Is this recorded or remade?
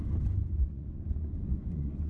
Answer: remade